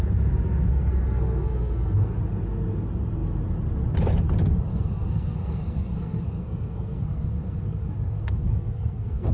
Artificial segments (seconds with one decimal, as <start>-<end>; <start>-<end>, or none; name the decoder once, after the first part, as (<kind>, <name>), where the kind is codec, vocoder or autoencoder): 0.7-2.2 (codec, SNAC); 4.7-9.3